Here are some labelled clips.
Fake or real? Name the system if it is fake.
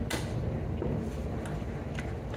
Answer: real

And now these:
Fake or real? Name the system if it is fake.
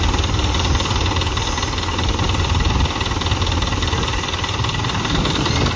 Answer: real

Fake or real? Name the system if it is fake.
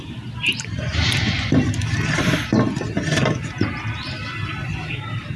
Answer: fake, vocoder, BigVGAN v2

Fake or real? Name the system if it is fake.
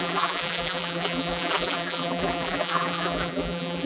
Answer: fake, vocoder, BigVGAN v2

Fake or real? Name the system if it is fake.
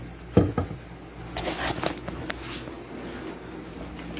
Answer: real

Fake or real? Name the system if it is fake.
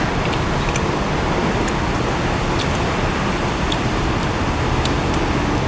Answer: real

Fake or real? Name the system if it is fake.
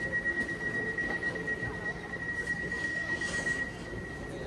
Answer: real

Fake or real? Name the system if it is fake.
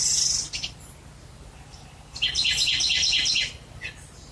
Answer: real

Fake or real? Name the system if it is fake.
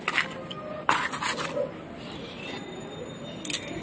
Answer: real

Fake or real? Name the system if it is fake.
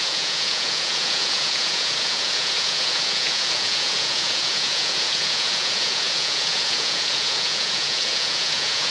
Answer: fake, vocoder, Vocos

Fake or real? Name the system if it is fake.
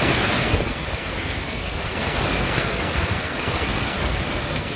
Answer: fake, codec, SNAC